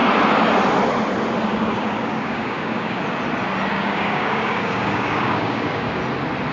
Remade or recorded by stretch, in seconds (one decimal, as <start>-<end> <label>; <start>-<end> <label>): 0.0-1.5 recorded; 1.5-3.0 remade; 3.0-3.7 recorded; 3.7-6.0 remade; 6.0-6.5 recorded